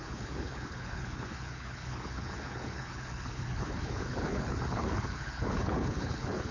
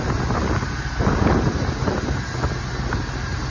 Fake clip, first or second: first